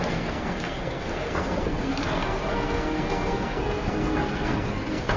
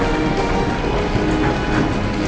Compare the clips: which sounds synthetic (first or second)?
first